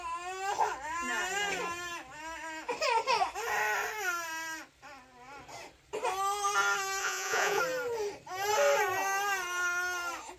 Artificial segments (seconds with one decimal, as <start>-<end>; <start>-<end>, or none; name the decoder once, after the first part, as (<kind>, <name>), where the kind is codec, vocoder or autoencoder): 7.0-7.6 (vocoder, Vocos)